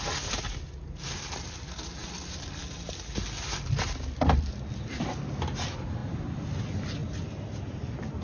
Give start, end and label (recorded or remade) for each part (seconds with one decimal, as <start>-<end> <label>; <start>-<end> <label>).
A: 0.0-2.0 recorded; 2.0-2.6 remade; 2.6-6.0 recorded; 6.0-6.6 remade; 6.6-7.0 recorded; 7.0-7.6 remade; 7.6-8.2 recorded